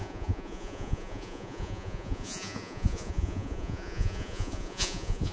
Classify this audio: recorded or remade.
remade